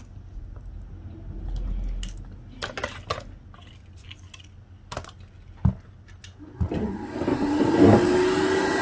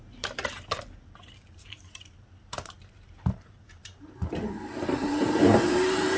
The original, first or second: first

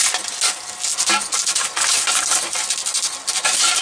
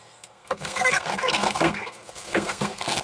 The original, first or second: first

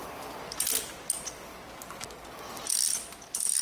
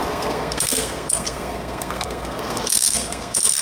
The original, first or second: first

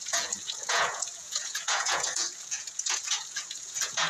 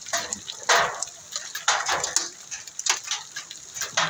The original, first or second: second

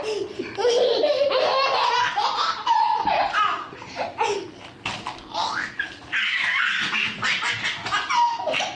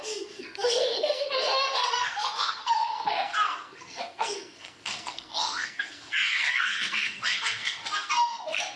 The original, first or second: first